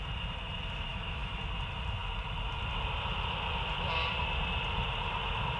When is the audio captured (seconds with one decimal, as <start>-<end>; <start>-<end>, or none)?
0.0-0.9; 1.4-5.6